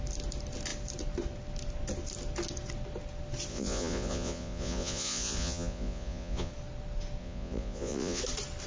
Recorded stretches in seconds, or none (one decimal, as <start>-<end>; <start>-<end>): 0.0-3.5; 6.5-7.2; 8.2-8.7